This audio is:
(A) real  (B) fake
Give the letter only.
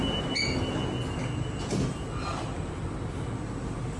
A